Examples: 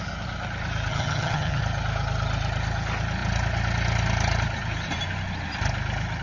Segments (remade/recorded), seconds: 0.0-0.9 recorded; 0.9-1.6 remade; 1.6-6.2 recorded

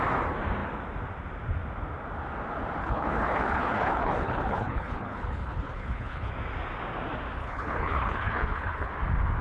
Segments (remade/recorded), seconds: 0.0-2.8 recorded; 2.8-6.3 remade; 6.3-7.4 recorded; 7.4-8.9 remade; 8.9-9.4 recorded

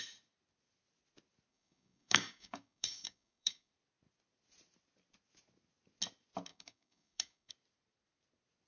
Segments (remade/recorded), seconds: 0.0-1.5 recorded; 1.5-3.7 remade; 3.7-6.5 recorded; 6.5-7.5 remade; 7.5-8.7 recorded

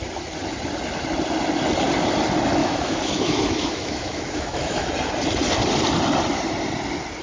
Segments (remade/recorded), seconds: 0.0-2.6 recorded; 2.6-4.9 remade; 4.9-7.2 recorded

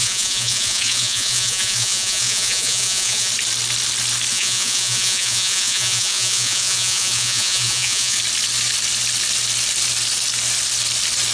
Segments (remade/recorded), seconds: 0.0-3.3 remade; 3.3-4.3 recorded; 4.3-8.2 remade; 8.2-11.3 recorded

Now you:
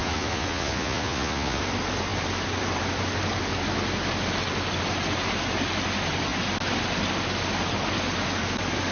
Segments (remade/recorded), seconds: 0.0-1.6 remade; 1.6-8.9 recorded

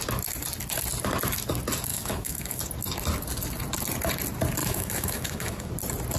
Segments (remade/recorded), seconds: 0.0-1.9 recorded; 1.9-2.6 remade; 2.6-4.6 recorded; 4.6-5.7 remade; 5.7-6.2 recorded

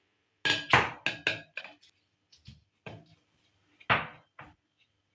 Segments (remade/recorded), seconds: 0.0-5.1 recorded